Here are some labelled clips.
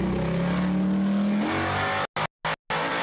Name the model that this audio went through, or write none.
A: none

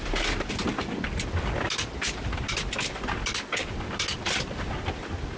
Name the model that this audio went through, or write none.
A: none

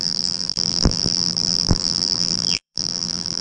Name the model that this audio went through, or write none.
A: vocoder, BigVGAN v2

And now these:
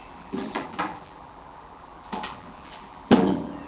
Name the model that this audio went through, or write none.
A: vocoder, BigVGAN v2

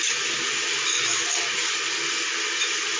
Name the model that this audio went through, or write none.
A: none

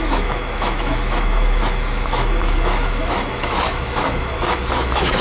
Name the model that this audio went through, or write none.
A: autoencoder, DAC-VAE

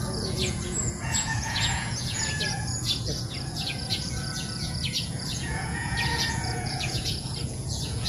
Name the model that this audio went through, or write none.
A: vocoder, Vocos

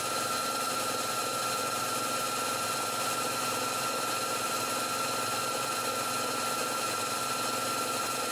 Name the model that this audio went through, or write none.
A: none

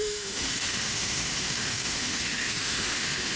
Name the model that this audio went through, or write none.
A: autoencoder, DAC-VAE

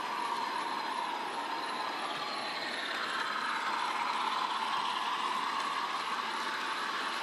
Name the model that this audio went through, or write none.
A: none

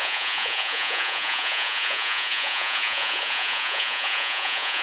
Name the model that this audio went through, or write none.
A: vocoder, Vocos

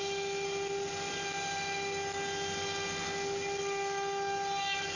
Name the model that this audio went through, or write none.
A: none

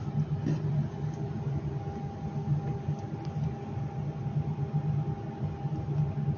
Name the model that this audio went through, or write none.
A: none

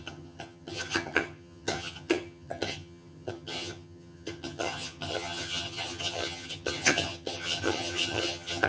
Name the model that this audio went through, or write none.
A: vocoder, HiFi-GAN